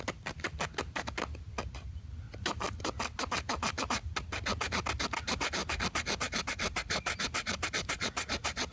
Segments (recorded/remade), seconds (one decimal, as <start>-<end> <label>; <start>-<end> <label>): 0.0-8.7 recorded